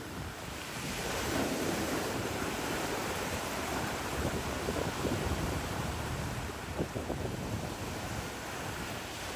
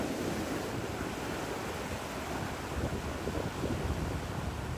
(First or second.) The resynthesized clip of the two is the first